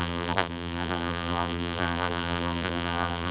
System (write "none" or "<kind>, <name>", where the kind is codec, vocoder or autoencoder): vocoder, BigVGAN v2